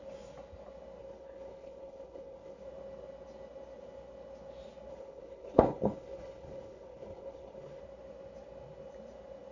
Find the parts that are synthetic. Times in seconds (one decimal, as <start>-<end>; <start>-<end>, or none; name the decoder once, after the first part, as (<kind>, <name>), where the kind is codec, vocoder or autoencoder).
1.0-2.6 (codec, HILCodec); 4.9-7.8